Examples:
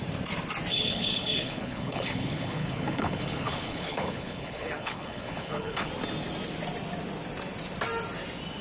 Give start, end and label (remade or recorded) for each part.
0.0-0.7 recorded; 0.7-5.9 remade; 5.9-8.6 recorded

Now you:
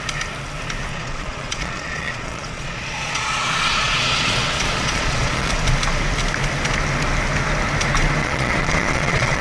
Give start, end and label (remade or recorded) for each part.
0.0-0.9 recorded; 0.9-5.5 remade; 5.5-8.2 recorded; 8.2-9.4 remade

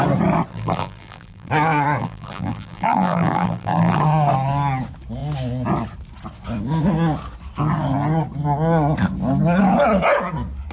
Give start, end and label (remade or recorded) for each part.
0.0-0.5 recorded; 0.5-1.5 remade; 1.5-2.0 recorded; 2.0-4.0 remade; 4.0-10.7 recorded

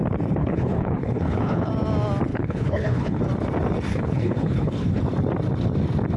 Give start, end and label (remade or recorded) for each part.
0.0-0.4 recorded; 0.4-1.7 remade; 1.7-2.3 recorded; 2.3-3.2 remade; 3.2-3.9 recorded; 3.9-5.0 remade; 5.0-6.2 recorded

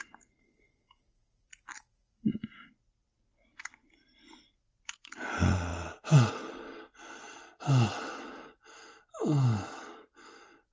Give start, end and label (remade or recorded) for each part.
0.0-10.7 recorded